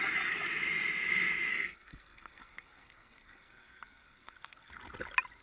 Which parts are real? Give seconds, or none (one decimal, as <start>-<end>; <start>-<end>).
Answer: 0.0-1.5; 4.7-5.4